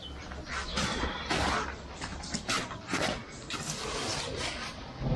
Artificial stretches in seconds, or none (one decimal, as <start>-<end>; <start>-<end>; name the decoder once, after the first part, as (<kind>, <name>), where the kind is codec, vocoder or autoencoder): 0.7-1.3 (vocoder, BigVGAN v2); 2.1-2.6